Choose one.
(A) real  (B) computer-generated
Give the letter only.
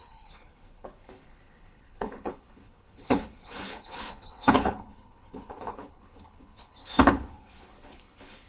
B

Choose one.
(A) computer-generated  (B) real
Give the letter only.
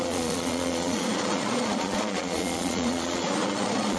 A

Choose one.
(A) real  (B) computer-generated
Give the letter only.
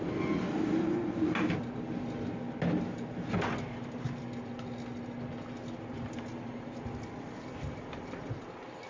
A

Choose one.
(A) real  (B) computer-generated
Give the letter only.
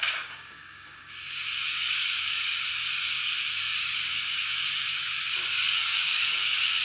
B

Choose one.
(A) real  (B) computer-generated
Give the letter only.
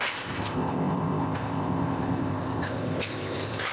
B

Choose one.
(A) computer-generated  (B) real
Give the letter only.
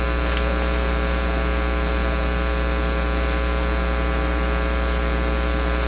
B